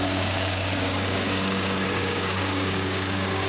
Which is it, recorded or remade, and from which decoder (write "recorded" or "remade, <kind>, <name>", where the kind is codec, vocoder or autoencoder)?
remade, codec, DAC